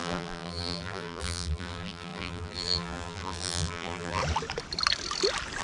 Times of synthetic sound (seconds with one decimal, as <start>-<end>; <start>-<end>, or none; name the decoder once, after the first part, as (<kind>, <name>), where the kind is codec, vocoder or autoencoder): 0.0-4.2 (vocoder, BigVGAN v2)